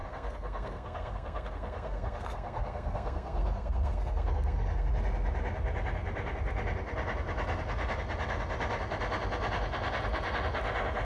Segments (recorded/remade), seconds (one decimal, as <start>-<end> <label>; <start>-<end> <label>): 0.0-4.9 remade; 4.9-11.0 recorded